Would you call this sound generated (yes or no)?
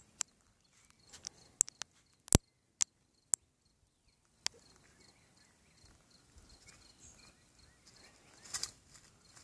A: no